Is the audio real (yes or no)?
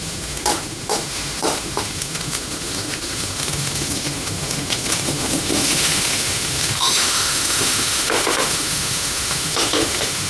no